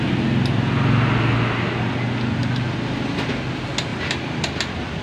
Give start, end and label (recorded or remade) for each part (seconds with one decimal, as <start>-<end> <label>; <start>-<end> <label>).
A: 0.0-3.9 recorded; 3.9-5.0 remade